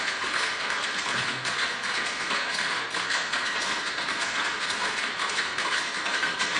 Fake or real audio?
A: fake